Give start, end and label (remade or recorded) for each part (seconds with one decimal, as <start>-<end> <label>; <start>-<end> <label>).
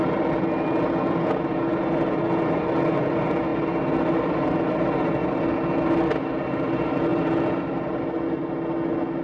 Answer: 0.0-9.2 recorded